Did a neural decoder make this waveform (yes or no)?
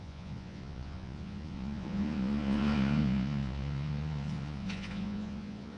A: yes